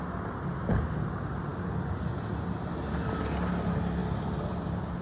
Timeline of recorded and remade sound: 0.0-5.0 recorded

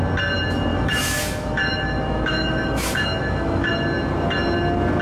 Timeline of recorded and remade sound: 0.0-0.7 recorded; 0.7-3.7 remade; 3.7-5.0 recorded

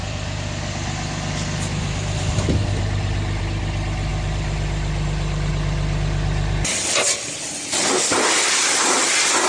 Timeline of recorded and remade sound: 0.0-4.1 recorded; 4.1-5.5 remade; 5.5-9.5 recorded

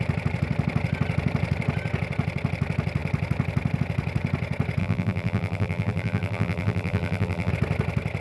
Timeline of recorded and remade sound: 0.0-4.8 recorded; 4.8-7.5 remade; 7.5-8.2 recorded

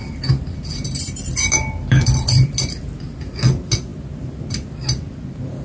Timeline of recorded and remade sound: 0.0-3.1 remade; 3.1-5.6 recorded

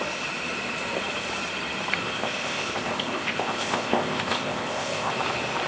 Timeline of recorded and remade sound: 0.0-2.0 recorded; 2.0-5.1 remade; 5.1-5.7 recorded

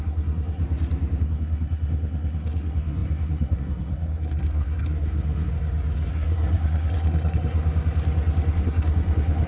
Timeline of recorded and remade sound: 0.0-0.6 remade; 0.6-1.2 recorded; 1.2-5.5 remade; 5.5-6.1 recorded; 6.1-7.6 remade; 7.6-8.5 recorded; 8.5-9.5 remade